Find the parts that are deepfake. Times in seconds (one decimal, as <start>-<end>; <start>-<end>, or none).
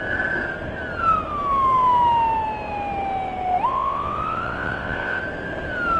3.7-5.2